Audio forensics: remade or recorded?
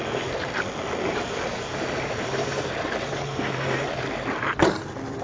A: remade